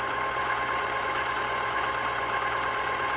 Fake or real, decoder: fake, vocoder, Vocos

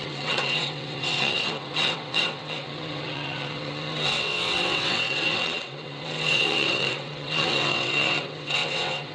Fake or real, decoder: fake, vocoder, WaveNeXt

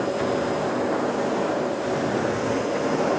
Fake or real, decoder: real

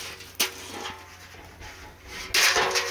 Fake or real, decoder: real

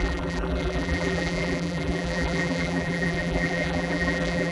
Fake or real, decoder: fake, vocoder, BigVGAN v2